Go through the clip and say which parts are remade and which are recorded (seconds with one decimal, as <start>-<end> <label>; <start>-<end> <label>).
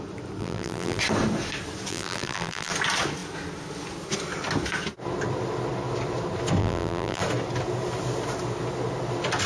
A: 0.0-0.4 recorded; 0.4-1.0 remade; 1.0-1.9 recorded; 1.9-2.7 remade; 2.7-6.6 recorded; 6.6-7.2 remade; 7.2-9.5 recorded